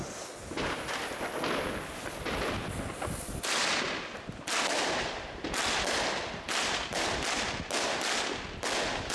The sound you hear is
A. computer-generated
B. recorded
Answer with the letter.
B